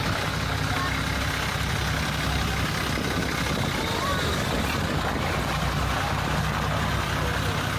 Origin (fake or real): real